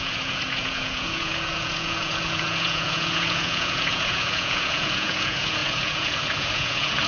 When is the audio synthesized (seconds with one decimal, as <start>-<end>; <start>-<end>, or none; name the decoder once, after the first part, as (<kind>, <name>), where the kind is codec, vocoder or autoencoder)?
0.0-7.1 (vocoder, Vocos)